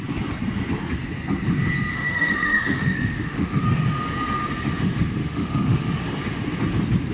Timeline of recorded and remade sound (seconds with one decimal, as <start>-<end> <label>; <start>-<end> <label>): 0.0-1.9 recorded; 1.9-3.6 remade; 3.6-5.2 recorded; 5.2-6.0 remade; 6.0-7.1 recorded